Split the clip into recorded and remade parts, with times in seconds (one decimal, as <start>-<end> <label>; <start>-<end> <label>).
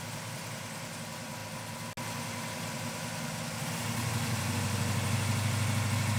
0.0-6.2 recorded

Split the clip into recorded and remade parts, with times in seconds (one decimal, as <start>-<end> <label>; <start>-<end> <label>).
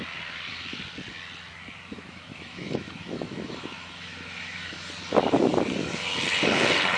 0.0-1.9 recorded; 1.9-4.9 remade; 4.9-7.0 recorded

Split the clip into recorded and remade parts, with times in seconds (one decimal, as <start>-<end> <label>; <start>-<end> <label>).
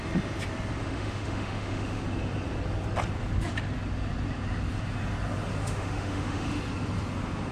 0.0-0.8 recorded; 0.8-2.0 remade; 2.0-5.6 recorded; 5.6-6.6 remade; 6.6-7.5 recorded